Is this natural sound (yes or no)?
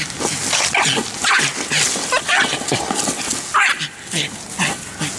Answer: yes